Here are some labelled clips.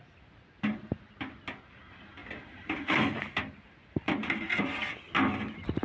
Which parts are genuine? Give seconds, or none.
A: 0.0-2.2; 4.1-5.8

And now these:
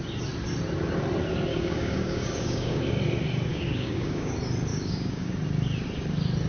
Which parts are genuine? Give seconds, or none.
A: 0.0-1.5; 2.8-3.5; 4.3-4.7; 5.3-6.5

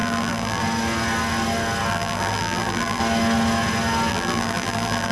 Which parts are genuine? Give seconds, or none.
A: 0.6-1.9; 3.0-4.1

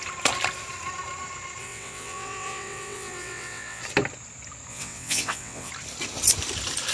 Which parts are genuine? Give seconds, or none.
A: 0.0-1.6; 3.8-4.7; 5.7-6.9

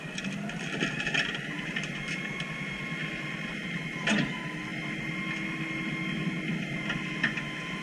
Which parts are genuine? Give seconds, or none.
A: 0.0-7.8